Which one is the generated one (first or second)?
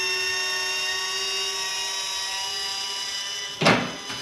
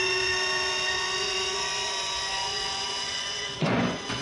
second